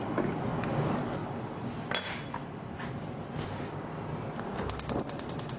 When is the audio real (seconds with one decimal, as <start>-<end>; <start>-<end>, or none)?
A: 0.0-5.6